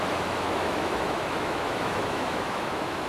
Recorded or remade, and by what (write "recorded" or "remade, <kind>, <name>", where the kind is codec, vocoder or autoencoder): remade, autoencoder, DAC-VAE